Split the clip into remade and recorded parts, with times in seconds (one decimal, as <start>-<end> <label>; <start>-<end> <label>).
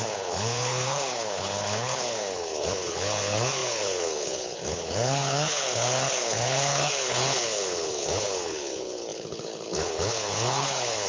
0.0-11.1 remade